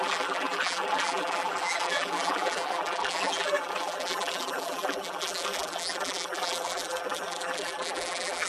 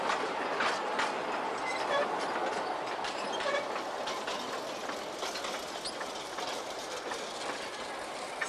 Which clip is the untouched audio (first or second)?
second